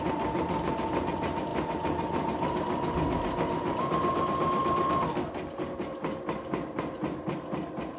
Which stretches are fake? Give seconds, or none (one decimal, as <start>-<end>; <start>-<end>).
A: none

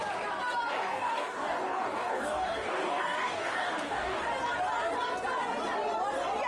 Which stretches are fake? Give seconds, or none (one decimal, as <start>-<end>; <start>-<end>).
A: 0.7-4.2

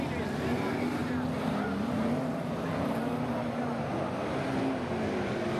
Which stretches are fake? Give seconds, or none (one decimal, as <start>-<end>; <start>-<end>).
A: none

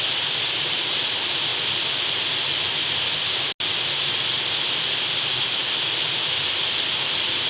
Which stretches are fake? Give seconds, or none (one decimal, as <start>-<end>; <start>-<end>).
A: none

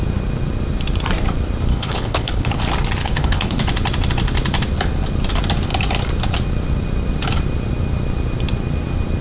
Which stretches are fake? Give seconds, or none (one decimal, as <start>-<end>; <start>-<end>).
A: 1.7-2.6; 3.0-3.6

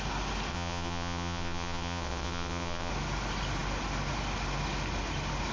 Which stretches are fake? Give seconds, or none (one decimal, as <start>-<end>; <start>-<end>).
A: 0.5-2.9